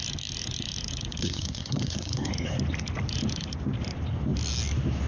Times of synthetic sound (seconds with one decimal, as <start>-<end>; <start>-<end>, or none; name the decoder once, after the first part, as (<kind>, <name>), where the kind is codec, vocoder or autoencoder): 1.2-2.3 (codec, SNAC)